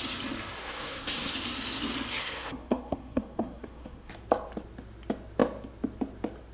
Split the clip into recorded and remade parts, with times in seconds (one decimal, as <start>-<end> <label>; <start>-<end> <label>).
0.0-0.6 recorded; 0.6-1.3 remade; 1.3-2.2 recorded; 2.2-4.1 remade; 4.1-6.5 recorded